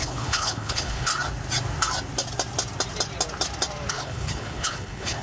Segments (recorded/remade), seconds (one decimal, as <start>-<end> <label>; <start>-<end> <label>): 0.0-1.1 remade; 1.1-3.9 recorded; 3.9-5.2 remade